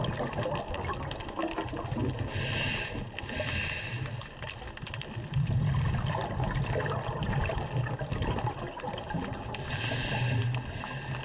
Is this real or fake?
real